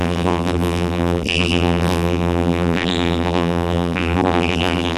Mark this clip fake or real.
fake